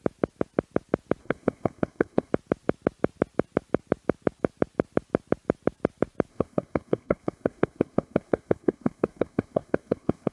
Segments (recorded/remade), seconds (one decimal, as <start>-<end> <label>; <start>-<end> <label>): 0.0-1.2 recorded; 1.2-2.3 remade; 2.3-6.3 recorded; 6.3-10.3 remade

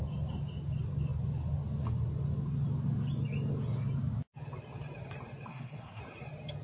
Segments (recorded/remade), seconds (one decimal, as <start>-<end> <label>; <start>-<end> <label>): 0.0-5.5 recorded; 5.5-6.0 remade; 6.0-6.6 recorded

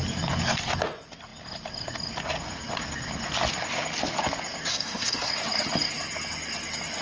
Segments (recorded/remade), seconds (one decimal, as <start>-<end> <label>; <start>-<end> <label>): 0.0-4.7 recorded; 4.7-5.3 remade; 5.3-7.0 recorded